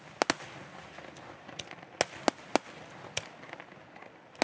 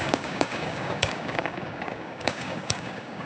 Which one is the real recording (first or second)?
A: first